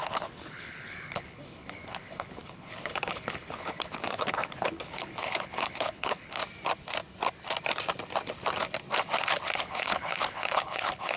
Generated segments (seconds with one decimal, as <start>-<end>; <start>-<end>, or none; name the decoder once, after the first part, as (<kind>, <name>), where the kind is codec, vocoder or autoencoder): 0.0-6.4 (codec, HILCodec); 9.6-11.2